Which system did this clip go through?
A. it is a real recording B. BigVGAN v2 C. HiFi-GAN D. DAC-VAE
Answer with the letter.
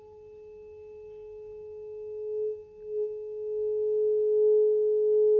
A